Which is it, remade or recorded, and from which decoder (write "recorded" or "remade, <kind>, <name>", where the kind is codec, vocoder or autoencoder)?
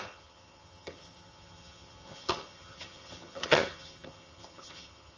remade, vocoder, HiFi-GAN